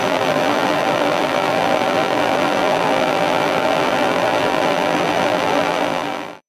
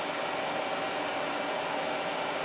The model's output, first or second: first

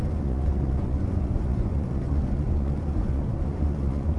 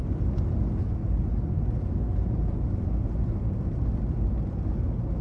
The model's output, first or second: first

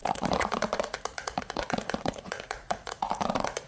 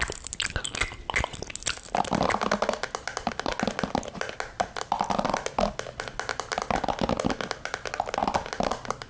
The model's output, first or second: first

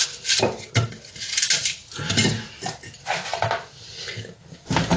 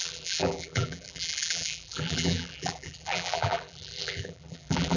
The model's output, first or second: second